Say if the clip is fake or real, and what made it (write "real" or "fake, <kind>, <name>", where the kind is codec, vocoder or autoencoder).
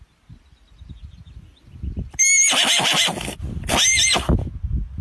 real